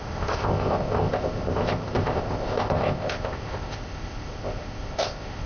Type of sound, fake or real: fake